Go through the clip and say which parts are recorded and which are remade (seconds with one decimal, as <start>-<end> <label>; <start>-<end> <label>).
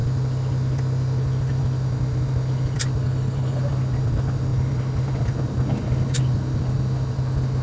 0.0-3.0 recorded; 3.0-3.6 remade; 3.6-7.6 recorded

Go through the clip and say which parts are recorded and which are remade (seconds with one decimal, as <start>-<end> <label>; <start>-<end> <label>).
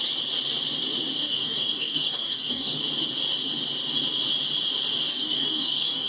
0.0-1.2 recorded; 1.2-2.8 remade; 2.8-5.1 recorded; 5.1-6.1 remade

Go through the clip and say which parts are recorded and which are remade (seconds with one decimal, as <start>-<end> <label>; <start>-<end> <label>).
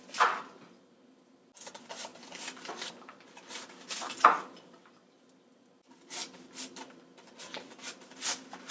0.0-8.7 recorded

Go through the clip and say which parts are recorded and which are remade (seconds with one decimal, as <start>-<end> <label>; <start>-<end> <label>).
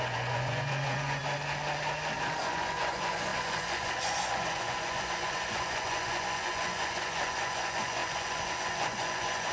0.0-1.2 remade; 1.2-2.4 recorded; 2.4-9.5 remade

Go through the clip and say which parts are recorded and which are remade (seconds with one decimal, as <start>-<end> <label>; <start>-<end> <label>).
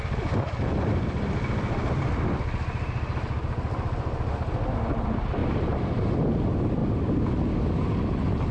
0.0-5.4 recorded; 5.4-6.3 remade; 6.3-8.5 recorded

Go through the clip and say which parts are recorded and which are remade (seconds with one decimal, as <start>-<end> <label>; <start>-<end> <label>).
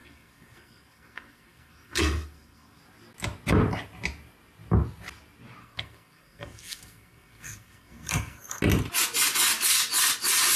0.0-2.8 remade; 2.8-5.6 recorded; 5.6-8.6 remade; 8.6-10.6 recorded